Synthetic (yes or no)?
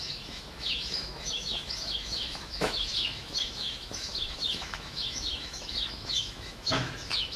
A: yes